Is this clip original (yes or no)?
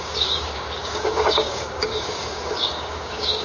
no